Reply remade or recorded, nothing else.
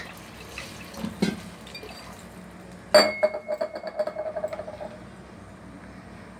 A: recorded